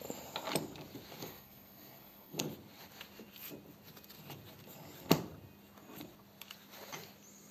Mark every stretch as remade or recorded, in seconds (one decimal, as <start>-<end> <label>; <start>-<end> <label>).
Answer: 0.0-1.2 recorded; 1.2-2.4 remade; 2.4-7.5 recorded